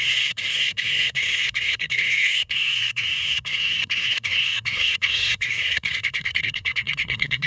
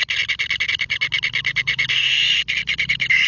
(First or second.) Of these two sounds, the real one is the second